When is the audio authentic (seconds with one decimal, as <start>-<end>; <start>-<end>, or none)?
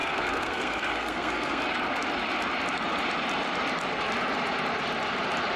1.6-5.6